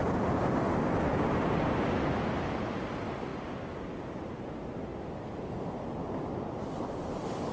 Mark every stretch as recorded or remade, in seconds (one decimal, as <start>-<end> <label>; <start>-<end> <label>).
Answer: 0.0-7.5 recorded